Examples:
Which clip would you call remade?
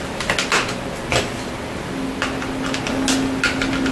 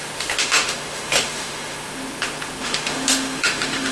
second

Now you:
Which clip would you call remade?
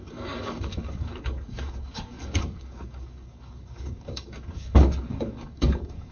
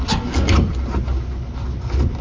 first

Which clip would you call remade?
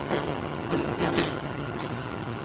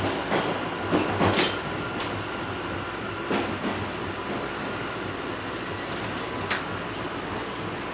first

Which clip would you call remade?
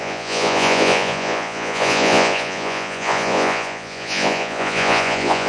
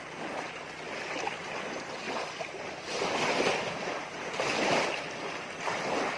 first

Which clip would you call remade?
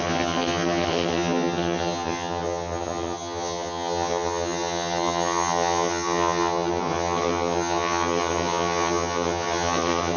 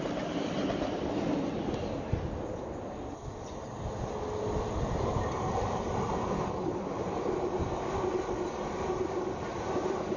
first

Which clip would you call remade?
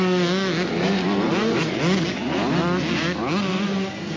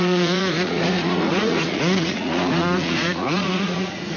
second